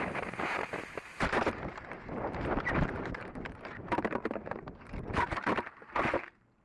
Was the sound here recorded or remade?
remade